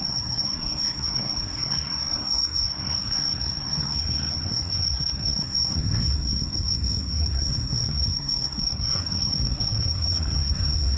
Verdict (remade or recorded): remade